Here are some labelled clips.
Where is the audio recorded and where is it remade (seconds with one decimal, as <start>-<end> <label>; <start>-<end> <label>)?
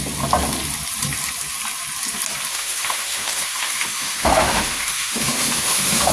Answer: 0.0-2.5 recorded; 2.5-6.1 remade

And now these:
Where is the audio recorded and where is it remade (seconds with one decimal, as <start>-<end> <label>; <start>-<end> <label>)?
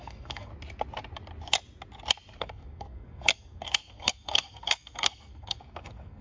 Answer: 0.0-0.5 remade; 0.5-2.4 recorded; 2.4-6.2 remade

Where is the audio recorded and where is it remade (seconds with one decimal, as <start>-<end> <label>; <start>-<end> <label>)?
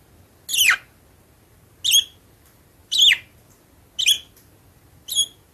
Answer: 0.0-5.5 recorded